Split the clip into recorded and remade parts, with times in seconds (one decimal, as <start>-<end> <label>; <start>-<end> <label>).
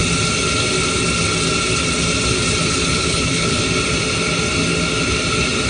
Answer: 0.0-2.9 recorded; 2.9-3.6 remade; 3.6-5.7 recorded